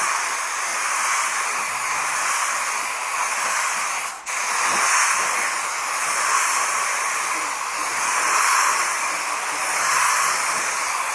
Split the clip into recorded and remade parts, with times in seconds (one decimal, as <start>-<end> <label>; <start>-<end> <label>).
0.0-0.7 recorded; 0.7-2.0 remade; 2.0-11.1 recorded